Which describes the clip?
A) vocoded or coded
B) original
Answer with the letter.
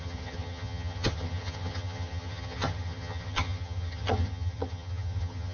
A